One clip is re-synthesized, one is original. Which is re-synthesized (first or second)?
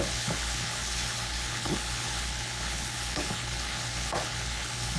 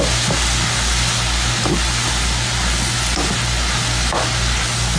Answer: first